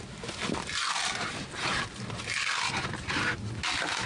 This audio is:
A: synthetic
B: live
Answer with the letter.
A